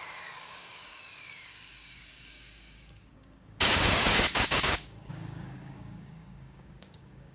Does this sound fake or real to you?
fake